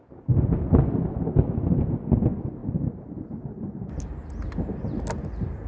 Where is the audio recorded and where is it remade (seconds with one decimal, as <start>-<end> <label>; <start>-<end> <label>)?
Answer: 0.0-5.7 recorded